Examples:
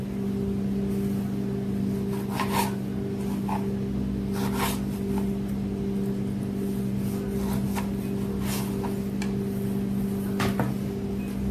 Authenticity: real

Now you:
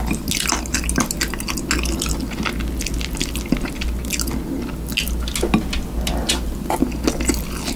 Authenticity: real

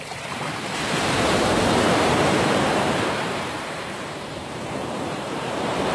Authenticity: fake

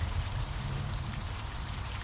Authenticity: fake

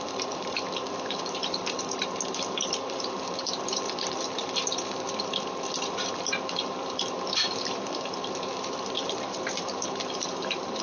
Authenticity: fake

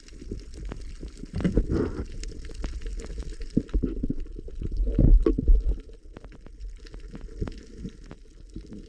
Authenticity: real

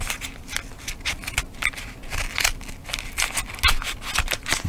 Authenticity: real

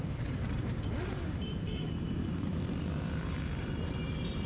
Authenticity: fake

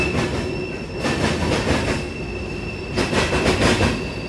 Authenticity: fake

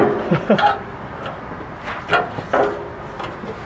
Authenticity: real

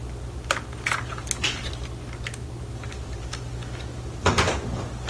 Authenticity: real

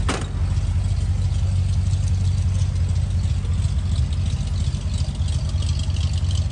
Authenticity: real